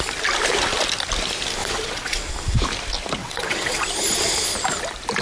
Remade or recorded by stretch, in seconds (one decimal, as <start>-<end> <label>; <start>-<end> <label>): 0.0-1.6 recorded; 1.6-2.3 remade; 2.3-3.2 recorded; 3.2-3.8 remade; 3.8-5.2 recorded